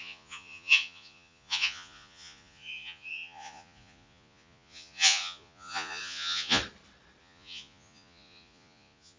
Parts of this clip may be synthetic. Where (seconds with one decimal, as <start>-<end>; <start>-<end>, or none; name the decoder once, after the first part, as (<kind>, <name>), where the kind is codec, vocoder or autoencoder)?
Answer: 0.0-6.6 (vocoder, Vocos); 7.2-9.2